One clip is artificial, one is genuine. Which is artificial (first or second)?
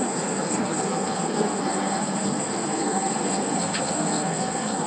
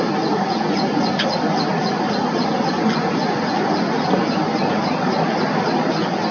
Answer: first